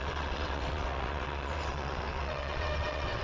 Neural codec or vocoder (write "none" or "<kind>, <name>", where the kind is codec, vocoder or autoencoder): vocoder, WaveNeXt